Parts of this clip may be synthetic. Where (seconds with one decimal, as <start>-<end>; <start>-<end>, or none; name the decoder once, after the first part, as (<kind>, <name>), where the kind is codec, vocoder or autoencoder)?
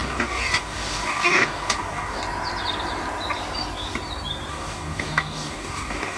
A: 0.0-2.2 (codec, DAC); 4.5-6.2